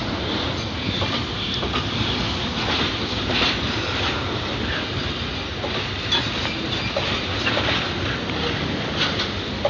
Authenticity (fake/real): real